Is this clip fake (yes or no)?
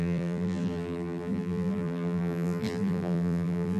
yes